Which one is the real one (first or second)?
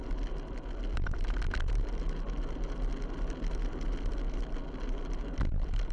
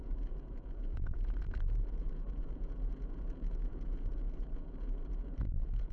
first